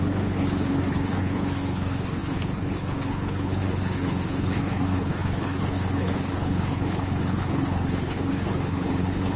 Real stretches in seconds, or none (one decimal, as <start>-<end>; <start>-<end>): none